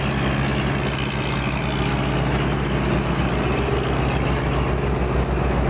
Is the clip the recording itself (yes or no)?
yes